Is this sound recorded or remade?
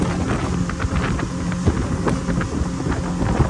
recorded